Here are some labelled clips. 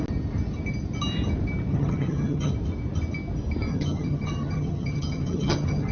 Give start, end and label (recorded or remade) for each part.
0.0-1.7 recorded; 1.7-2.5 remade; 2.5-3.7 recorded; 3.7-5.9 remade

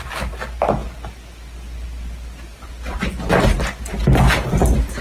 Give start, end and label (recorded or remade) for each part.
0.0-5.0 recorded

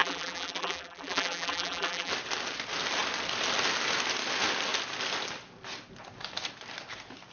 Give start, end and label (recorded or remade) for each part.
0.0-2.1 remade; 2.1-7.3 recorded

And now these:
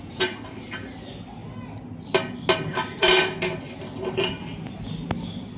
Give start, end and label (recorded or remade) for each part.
0.0-5.6 recorded

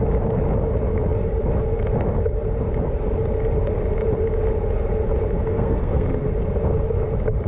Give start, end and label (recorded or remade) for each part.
0.0-5.4 recorded; 5.4-6.3 remade; 6.3-7.5 recorded

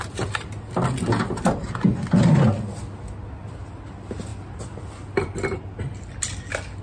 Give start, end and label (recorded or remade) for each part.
0.0-6.8 recorded